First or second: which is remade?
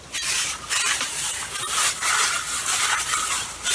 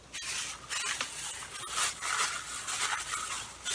first